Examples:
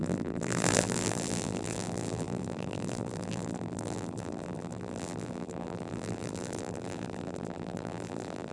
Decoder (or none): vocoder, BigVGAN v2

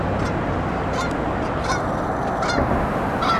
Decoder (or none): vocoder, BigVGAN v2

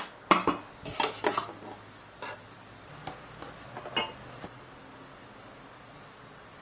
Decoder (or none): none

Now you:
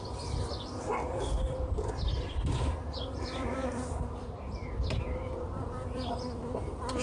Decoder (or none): vocoder, BigVGAN v2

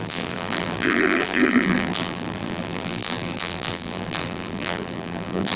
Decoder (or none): vocoder, BigVGAN v2